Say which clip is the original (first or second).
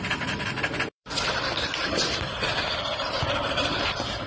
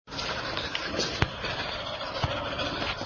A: second